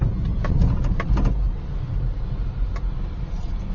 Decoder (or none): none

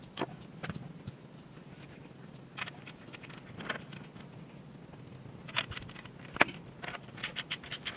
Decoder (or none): none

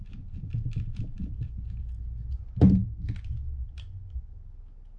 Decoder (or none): none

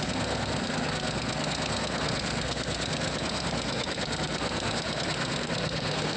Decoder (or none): codec, SNAC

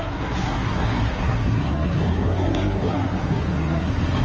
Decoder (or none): codec, SNAC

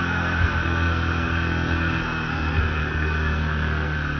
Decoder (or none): codec, SNAC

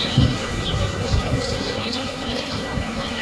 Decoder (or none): codec, SNAC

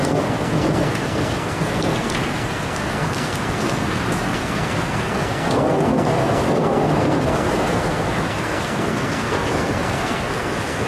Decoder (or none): codec, SNAC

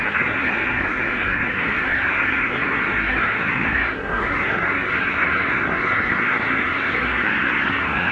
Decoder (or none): codec, SNAC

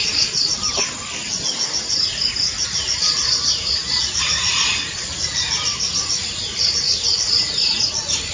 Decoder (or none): none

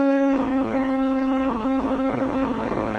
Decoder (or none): codec, SNAC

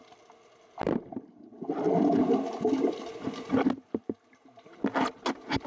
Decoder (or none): none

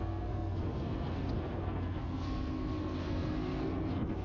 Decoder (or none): codec, SNAC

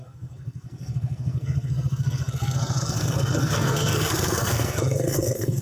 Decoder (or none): codec, SNAC